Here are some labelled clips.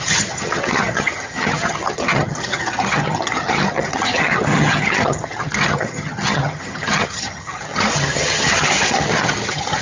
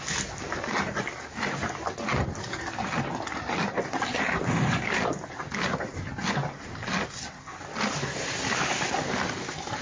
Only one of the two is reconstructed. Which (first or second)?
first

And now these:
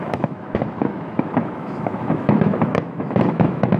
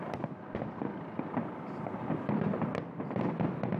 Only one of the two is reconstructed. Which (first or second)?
first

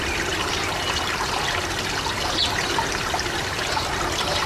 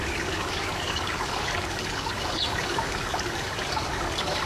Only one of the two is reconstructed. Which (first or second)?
second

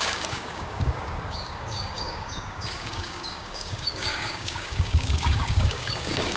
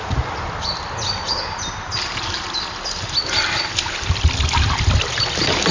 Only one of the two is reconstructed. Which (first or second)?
first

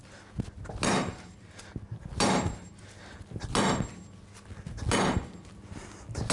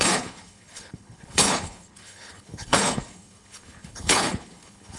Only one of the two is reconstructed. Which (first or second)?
second